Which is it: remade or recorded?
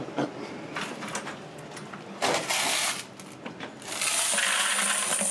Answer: recorded